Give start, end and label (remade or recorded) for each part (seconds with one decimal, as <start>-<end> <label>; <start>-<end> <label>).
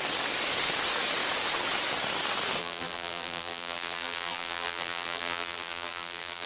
0.0-2.6 recorded; 2.6-6.5 remade